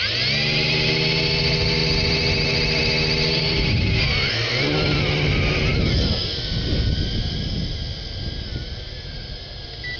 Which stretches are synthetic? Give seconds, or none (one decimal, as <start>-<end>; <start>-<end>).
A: none